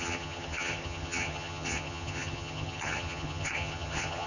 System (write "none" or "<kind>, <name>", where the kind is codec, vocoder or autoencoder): vocoder, HiFi-GAN